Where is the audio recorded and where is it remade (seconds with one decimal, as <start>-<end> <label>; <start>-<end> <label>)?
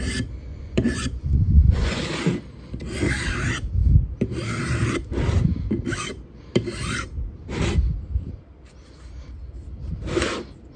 0.0-0.5 recorded; 0.5-2.0 remade; 2.0-10.8 recorded